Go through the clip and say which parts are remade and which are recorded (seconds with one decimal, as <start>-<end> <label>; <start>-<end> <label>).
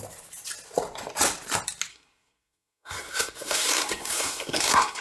0.0-1.9 recorded; 1.9-5.0 remade